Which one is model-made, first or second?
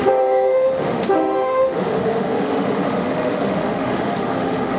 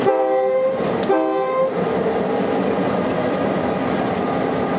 first